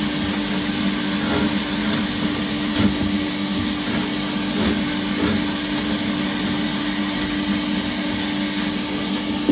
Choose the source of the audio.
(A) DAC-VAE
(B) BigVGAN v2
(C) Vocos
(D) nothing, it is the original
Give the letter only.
D